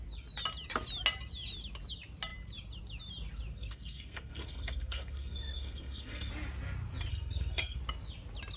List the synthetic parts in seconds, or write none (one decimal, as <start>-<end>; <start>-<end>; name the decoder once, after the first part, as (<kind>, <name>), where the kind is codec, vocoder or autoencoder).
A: 3.5-6.3 (codec, SNAC); 7.1-7.8